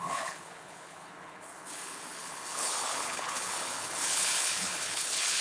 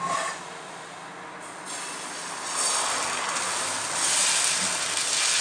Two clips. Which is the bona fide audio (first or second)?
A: second